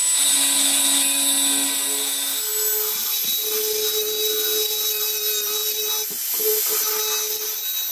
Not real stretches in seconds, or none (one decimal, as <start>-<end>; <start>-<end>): none